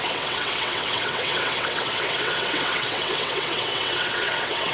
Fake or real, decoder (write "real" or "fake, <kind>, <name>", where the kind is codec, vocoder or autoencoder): fake, vocoder, WaveNeXt